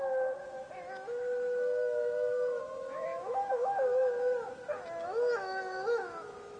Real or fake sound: fake